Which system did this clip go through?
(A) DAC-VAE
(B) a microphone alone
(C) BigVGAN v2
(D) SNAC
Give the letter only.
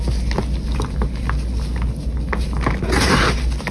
B